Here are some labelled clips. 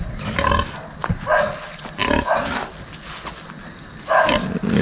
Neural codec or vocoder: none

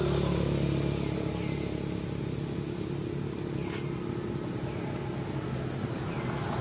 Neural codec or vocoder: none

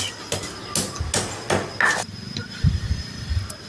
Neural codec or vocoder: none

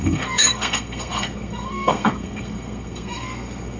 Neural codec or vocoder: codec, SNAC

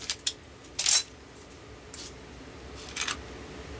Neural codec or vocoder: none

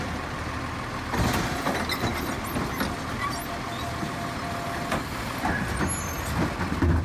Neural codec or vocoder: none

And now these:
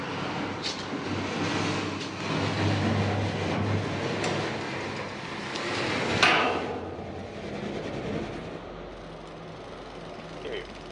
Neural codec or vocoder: none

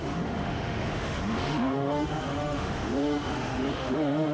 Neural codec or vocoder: autoencoder, DAC-VAE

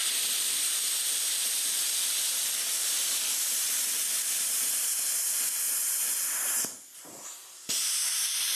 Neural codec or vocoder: vocoder, BigVGAN v2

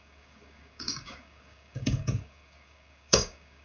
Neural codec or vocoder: codec, DAC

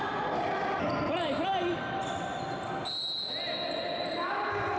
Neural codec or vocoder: none